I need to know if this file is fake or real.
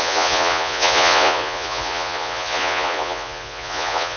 fake